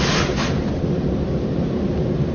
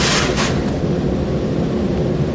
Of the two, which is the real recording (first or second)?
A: second